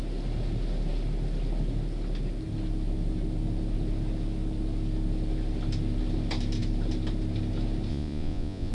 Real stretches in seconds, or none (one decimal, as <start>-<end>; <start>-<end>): 0.0-7.9